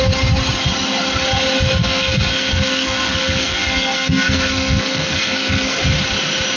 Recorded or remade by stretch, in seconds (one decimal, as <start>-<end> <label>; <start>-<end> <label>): 0.0-1.8 recorded; 1.8-5.8 remade; 5.8-6.6 recorded